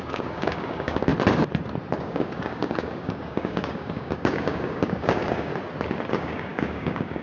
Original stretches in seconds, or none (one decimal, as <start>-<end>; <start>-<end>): 1.1-2.0; 5.5-6.1